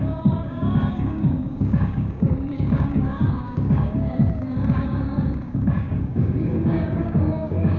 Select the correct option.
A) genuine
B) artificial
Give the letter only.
B